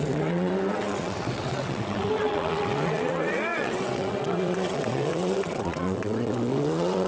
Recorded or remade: remade